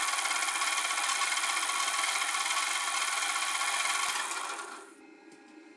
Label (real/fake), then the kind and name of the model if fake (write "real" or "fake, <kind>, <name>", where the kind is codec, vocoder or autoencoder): real